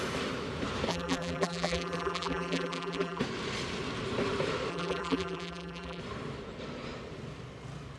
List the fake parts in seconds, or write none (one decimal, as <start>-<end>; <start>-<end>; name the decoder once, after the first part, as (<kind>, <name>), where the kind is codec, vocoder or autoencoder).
0.9-3.2 (vocoder, BigVGAN v2); 4.7-6.0